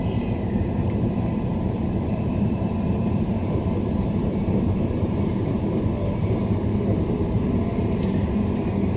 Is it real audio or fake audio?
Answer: fake